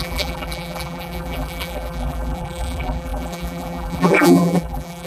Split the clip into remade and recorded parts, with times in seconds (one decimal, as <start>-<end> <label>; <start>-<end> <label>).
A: 0.0-5.1 remade